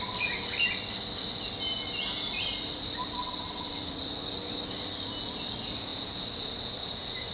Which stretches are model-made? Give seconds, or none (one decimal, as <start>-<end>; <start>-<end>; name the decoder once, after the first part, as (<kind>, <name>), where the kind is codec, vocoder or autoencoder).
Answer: 3.2-3.9 (vocoder, WaveNeXt)